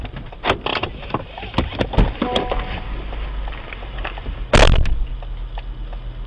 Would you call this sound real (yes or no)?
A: yes